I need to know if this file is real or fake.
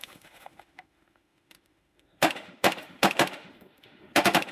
fake